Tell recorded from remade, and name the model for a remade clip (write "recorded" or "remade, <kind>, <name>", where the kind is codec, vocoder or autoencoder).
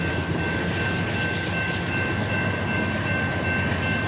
recorded